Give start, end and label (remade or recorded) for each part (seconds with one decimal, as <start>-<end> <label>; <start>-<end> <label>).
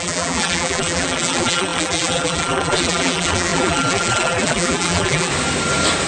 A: 0.0-5.3 remade; 5.3-6.1 recorded